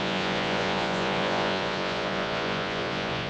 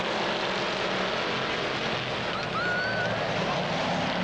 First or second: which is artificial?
first